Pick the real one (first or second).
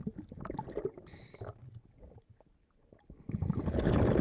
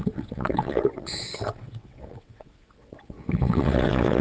first